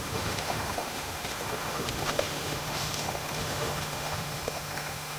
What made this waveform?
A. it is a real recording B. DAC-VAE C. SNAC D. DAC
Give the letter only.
B